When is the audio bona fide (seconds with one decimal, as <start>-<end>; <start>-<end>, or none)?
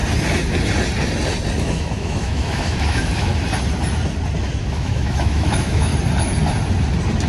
0.0-1.6; 3.3-4.7; 5.9-7.3